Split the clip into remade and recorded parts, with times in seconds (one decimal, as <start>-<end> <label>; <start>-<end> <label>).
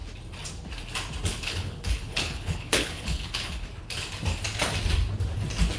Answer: 0.0-1.3 recorded; 1.3-3.7 remade; 3.7-5.8 recorded